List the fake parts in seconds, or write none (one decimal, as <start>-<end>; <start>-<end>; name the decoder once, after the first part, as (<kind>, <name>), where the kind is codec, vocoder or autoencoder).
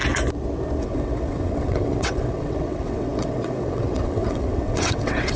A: 0.8-5.4 (vocoder, WaveNeXt)